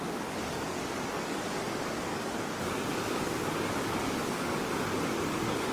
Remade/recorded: remade